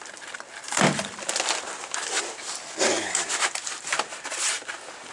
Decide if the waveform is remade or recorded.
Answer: remade